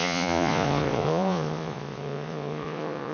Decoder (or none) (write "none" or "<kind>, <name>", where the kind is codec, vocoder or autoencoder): vocoder, Vocos